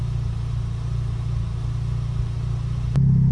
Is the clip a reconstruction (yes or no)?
no